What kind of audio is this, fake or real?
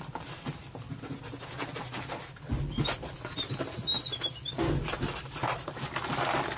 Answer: real